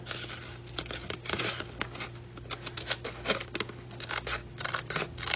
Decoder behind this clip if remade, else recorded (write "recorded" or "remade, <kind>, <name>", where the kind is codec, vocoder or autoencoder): recorded